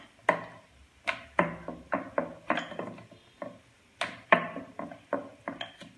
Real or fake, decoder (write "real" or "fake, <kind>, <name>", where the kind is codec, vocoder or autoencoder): real